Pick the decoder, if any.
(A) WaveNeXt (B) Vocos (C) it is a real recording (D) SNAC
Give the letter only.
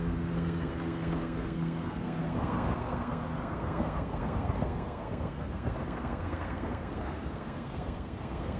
D